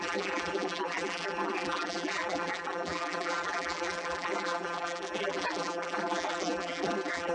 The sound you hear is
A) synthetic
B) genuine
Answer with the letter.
A